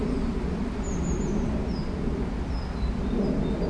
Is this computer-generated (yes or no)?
no